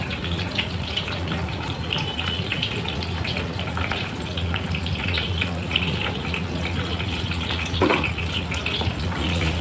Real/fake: fake